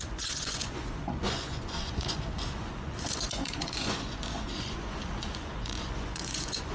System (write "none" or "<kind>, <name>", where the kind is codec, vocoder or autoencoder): vocoder, Vocos